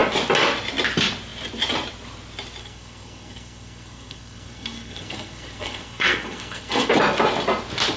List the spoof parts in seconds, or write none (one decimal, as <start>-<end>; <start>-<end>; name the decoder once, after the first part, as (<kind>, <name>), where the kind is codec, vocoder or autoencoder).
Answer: 2.6-6.9 (codec, SNAC)

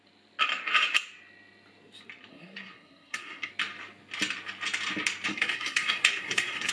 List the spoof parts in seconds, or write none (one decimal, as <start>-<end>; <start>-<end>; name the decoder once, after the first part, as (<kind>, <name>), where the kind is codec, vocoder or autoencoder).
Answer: 2.3-3.5 (codec, SNAC); 5.3-6.7

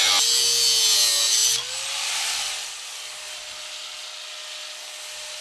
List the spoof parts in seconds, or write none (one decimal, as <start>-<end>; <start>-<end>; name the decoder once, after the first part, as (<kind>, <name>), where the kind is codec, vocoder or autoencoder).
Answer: none

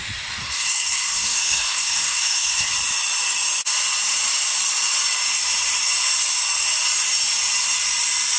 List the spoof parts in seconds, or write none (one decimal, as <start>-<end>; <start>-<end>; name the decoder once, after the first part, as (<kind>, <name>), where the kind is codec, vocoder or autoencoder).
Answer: 0.4-2.7 (codec, SNAC)

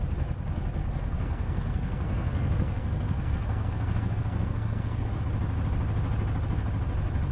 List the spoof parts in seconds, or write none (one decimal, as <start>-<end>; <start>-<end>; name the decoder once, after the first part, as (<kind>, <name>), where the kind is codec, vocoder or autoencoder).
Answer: 0.8-5.2 (codec, SNAC)

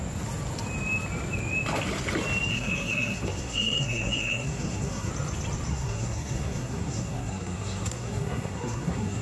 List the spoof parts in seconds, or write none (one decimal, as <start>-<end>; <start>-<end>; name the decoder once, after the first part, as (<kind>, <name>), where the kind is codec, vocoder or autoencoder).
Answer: 2.5-5.1 (codec, SNAC); 5.7-9.2